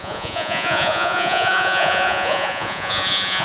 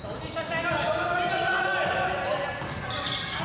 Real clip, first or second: second